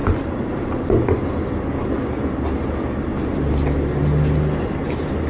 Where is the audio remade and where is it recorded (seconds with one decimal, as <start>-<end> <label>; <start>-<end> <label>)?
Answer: 0.0-5.3 recorded